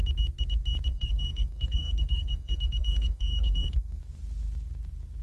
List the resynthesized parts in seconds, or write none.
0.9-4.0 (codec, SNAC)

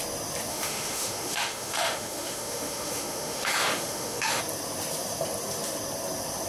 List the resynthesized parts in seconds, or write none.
0.5-4.4 (autoencoder, DAC-VAE)

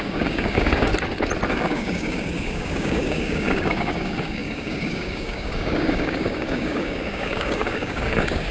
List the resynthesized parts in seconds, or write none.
0.0-0.9 (codec, DAC); 1.5-8.5

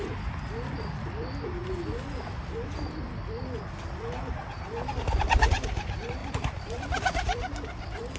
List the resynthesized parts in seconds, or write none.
0.0-1.6 (vocoder, BigVGAN v2); 5.2-8.2

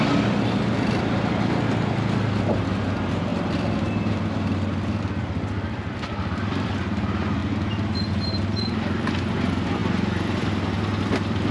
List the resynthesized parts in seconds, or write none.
none

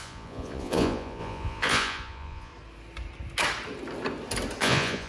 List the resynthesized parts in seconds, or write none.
0.0-2.5 (vocoder, Vocos); 4.6-5.1

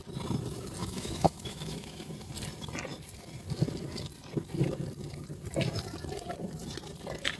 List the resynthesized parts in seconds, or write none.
0.8-2.1 (autoencoder, DAC-VAE)